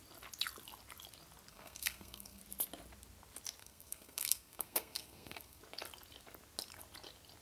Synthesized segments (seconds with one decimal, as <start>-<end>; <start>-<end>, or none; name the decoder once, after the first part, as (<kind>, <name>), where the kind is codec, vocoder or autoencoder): 1.5-2.4 (codec, SNAC); 3.6-5.6